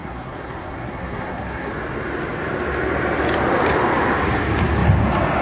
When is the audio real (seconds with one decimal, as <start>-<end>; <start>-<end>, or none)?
1.7-5.4